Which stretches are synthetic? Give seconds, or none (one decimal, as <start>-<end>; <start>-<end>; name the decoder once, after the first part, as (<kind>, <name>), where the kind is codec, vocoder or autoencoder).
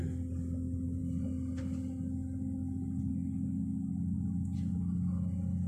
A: none